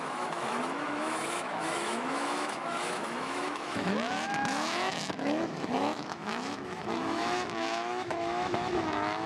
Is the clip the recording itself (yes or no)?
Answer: no